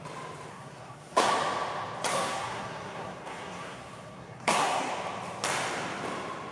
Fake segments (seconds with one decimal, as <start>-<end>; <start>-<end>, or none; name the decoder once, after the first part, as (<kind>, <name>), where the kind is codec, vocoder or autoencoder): 0.5-1.3 (codec, SNAC); 2.1-4.9